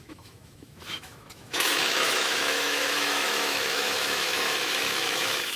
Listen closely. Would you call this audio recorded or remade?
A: remade